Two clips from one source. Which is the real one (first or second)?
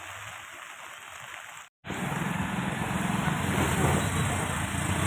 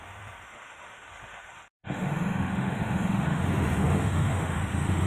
first